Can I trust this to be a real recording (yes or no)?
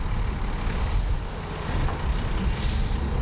yes